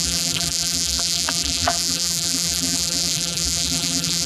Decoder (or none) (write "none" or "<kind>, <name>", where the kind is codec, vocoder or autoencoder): vocoder, BigVGAN v2